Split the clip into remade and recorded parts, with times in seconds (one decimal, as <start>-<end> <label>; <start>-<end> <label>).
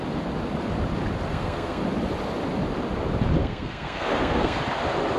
0.0-1.3 recorded; 1.3-1.8 remade; 1.8-3.4 recorded; 3.4-4.6 remade; 4.6-5.2 recorded